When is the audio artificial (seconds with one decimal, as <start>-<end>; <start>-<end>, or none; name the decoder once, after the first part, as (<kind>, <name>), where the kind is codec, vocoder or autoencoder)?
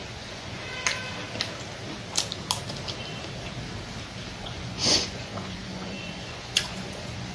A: 0.0-0.6 (vocoder, Vocos); 4.4-7.3